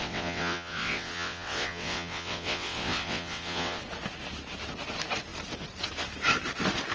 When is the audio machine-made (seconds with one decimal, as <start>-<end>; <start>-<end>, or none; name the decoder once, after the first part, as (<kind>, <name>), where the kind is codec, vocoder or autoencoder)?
0.0-3.8 (vocoder, WaveNeXt)